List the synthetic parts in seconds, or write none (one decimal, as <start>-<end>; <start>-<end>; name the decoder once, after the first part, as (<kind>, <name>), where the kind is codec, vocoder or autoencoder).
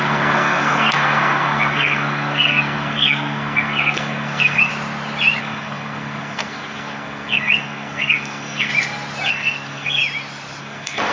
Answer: 0.0-4.7 (codec, SNAC); 5.4-8.7; 9.3-10.0; 10.6-11.1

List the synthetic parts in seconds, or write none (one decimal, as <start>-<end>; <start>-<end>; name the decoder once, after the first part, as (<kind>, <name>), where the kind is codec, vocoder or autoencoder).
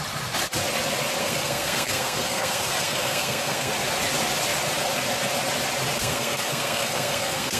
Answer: 1.2-3.7 (codec, SNAC); 6.0-7.6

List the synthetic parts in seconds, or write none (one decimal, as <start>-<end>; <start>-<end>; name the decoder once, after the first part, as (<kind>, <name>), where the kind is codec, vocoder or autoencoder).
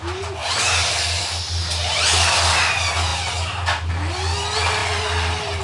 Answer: none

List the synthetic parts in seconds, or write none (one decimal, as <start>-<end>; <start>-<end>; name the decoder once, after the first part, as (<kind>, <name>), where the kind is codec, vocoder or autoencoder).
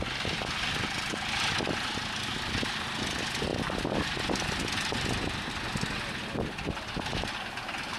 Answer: none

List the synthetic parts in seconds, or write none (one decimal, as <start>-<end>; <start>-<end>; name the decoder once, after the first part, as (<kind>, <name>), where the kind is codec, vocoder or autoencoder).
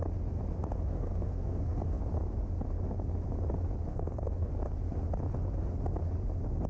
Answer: 0.9-2.0 (codec, SNAC); 3.9-4.5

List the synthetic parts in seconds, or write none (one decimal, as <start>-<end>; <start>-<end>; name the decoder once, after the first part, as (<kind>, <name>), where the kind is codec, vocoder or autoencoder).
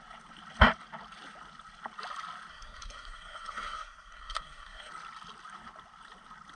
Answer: 2.5-4.9 (codec, SNAC)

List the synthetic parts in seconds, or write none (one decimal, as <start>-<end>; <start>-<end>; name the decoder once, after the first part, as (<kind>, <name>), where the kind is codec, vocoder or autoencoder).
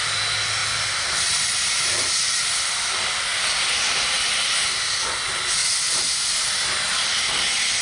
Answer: none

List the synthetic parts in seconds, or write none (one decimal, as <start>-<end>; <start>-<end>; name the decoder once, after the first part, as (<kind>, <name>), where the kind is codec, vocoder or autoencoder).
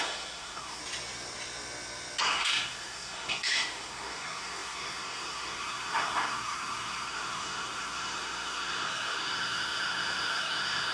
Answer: 0.0-0.8 (codec, SNAC); 2.2-10.9